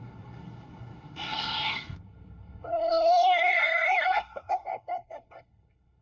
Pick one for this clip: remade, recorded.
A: remade